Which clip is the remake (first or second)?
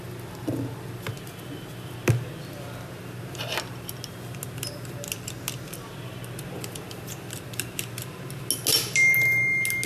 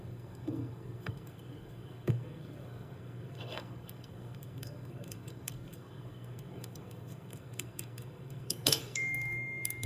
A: second